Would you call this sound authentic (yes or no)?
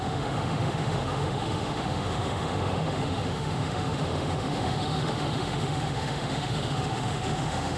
no